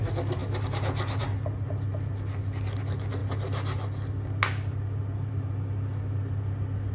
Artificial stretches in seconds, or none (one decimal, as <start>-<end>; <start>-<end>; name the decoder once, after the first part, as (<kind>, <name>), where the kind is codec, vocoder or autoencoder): none